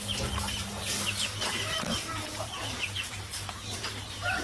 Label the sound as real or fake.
fake